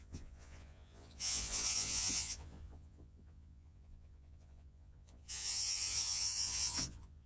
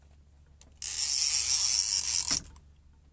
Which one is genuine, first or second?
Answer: second